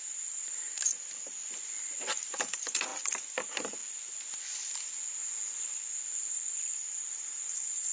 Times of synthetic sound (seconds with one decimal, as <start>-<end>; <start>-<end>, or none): 0.0-1.4; 2.2-2.9; 3.4-3.8; 6.3-7.9